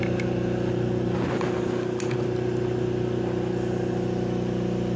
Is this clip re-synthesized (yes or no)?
no